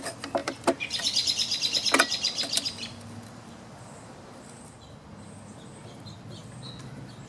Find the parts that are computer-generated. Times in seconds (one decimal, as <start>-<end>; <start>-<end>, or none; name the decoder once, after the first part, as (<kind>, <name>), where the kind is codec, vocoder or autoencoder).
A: 0.4-4.8 (vocoder, BigVGAN v2); 6.4-7.3